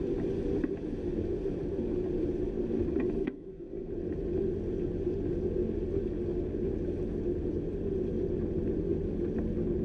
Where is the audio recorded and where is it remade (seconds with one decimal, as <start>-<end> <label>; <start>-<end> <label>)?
0.0-3.2 recorded; 3.2-3.9 remade; 3.9-9.8 recorded